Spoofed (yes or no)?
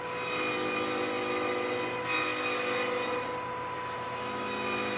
no